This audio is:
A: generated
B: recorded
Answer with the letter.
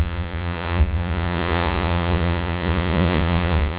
A